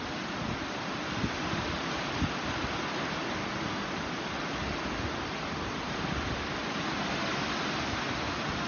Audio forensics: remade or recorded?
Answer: recorded